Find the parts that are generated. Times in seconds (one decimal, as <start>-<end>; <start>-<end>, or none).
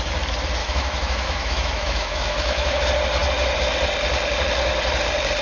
0.6-2.8